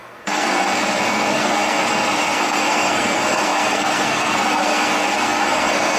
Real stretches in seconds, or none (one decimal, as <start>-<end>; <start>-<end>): none